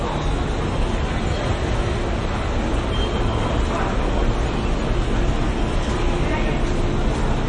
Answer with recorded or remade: recorded